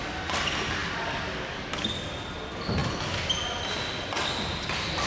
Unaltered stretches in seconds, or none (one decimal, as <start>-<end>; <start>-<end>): 0.0-0.8; 1.8-5.1